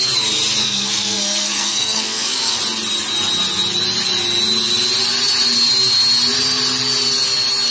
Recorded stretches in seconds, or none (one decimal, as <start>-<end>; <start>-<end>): 0.0-0.6; 2.6-7.7